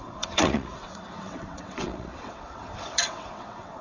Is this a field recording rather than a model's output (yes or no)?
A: no